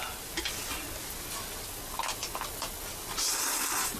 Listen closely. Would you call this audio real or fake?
real